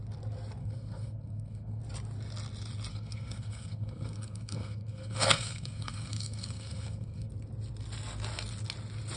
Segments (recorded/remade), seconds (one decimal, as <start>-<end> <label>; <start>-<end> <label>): 0.0-0.6 recorded; 0.6-1.8 remade; 1.8-2.9 recorded; 2.9-7.3 remade; 7.3-9.2 recorded